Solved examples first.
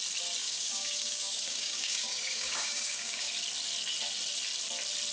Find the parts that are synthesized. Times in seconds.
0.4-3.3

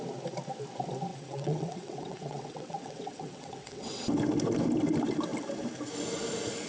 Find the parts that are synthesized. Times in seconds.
1.1-4.0

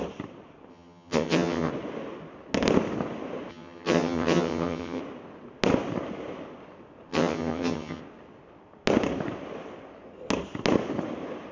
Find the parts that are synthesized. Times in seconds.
0.7-1.7; 3.5-5.0; 7.1-8.0

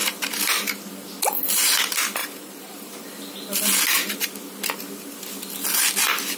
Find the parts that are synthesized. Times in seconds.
0.0-0.9; 2.2-3.1

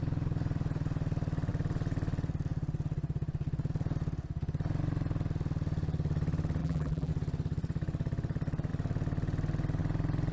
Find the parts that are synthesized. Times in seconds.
6.6-7.1